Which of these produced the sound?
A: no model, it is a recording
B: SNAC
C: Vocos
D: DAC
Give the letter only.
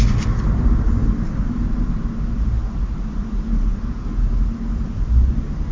A